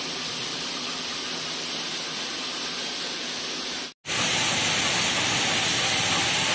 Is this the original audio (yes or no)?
yes